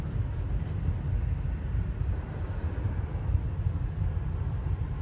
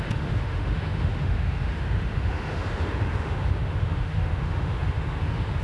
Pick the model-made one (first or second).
second